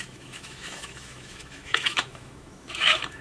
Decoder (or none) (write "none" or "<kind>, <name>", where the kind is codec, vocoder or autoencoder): autoencoder, DAC-VAE